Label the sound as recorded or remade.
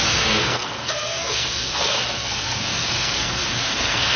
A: remade